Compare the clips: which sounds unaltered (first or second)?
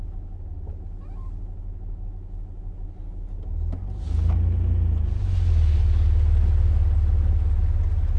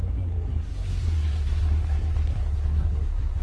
first